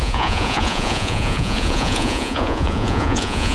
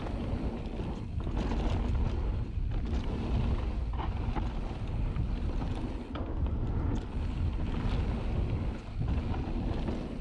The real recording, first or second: second